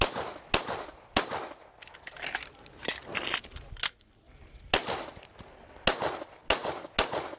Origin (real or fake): real